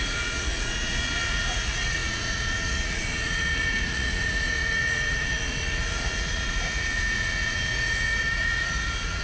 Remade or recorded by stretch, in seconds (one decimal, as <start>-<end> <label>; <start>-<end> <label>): 0.0-9.2 remade